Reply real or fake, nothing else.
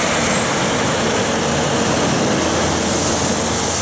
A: real